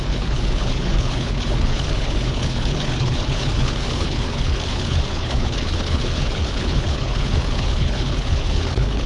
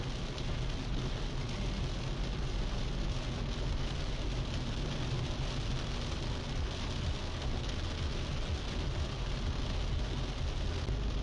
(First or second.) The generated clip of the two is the first